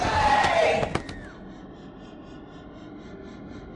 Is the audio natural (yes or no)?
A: yes